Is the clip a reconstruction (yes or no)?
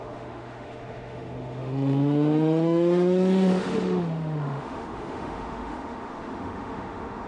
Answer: yes